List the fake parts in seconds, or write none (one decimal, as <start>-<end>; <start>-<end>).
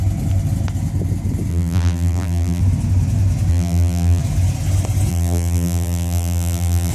1.5-2.6; 3.5-4.2; 5.1-6.9